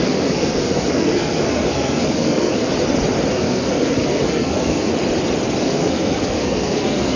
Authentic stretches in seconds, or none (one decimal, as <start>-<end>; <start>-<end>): 2.7-3.3; 4.9-5.6